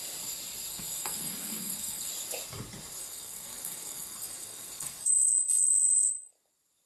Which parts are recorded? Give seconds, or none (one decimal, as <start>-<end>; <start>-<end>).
0.0-0.7; 2.1-3.0; 6.3-6.9